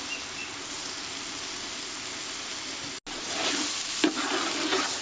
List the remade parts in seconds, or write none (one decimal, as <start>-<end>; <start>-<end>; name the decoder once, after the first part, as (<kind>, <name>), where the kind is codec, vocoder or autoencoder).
none